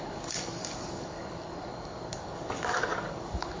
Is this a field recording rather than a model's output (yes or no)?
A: no